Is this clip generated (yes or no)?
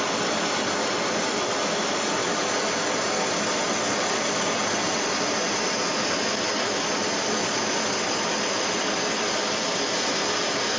no